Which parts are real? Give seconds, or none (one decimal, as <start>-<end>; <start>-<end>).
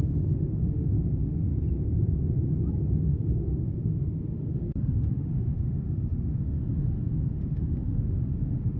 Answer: 1.5-3.0